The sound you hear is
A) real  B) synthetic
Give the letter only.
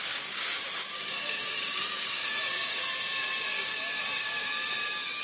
B